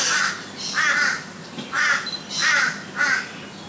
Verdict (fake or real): real